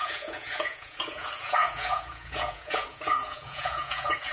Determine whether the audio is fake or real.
fake